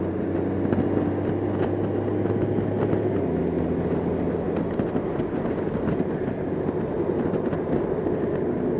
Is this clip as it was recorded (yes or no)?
yes